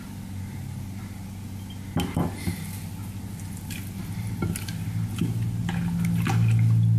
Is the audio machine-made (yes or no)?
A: no